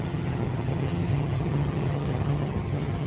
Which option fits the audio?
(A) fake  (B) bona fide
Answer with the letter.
A